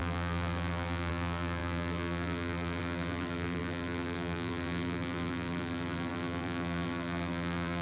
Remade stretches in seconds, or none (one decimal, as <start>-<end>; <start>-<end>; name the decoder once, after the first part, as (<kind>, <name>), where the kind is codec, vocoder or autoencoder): 0.0-7.8 (vocoder, BigVGAN v2)